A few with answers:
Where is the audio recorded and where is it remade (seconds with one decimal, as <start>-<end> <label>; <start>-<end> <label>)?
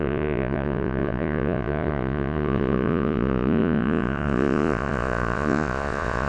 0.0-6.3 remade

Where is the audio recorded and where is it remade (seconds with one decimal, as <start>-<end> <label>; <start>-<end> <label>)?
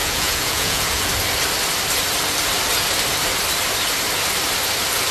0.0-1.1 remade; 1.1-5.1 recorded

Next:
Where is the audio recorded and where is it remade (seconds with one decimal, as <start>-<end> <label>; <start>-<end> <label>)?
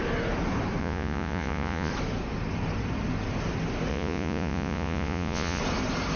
0.0-0.8 recorded; 0.8-1.9 remade; 1.9-3.9 recorded; 3.9-5.6 remade; 5.6-6.2 recorded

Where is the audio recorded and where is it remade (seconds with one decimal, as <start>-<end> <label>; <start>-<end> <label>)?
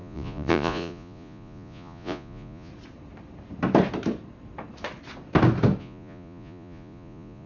0.0-2.7 remade; 2.7-5.8 recorded; 5.8-7.5 remade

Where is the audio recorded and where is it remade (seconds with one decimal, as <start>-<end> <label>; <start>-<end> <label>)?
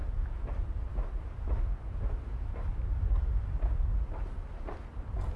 0.0-5.4 recorded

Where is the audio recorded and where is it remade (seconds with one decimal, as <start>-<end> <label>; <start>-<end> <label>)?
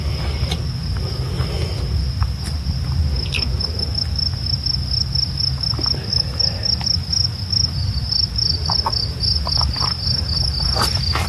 0.0-11.3 recorded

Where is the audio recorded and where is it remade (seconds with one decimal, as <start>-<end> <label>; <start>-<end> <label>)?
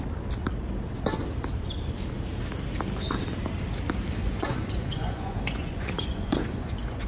0.0-4.2 recorded; 4.2-7.1 remade